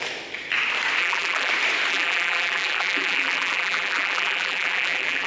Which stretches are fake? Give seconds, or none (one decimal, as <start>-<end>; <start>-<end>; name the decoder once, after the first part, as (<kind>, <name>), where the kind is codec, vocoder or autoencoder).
1.0-1.5 (vocoder, BigVGAN v2); 1.9-5.3